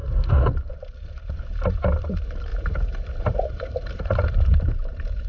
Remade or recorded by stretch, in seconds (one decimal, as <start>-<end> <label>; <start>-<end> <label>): 0.0-0.7 recorded; 0.7-2.5 remade; 2.5-3.2 recorded; 3.2-5.3 remade